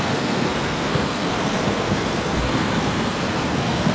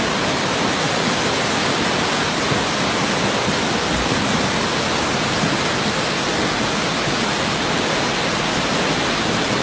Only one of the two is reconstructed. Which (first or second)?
first